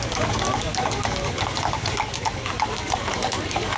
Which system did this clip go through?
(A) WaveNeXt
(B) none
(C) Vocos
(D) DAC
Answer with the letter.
D